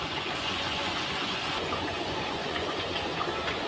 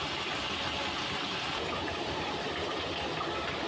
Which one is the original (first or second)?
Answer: second